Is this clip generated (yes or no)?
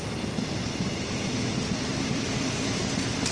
yes